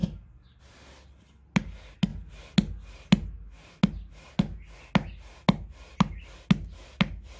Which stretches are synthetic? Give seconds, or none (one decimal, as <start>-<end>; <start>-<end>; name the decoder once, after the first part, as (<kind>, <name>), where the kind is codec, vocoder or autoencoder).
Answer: none